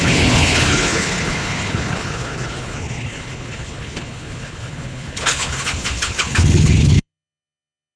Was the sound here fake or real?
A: fake